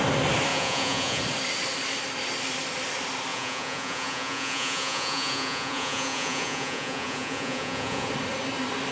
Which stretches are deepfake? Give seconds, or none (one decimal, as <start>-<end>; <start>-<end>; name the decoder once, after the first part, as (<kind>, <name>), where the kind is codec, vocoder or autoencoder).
0.5-1.2 (vocoder, Vocos); 3.3-8.1